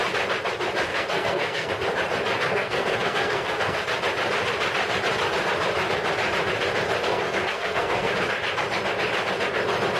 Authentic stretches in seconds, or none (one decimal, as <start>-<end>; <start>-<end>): 0.0-0.9; 1.7-2.5; 3.8-7.1; 8.1-10.0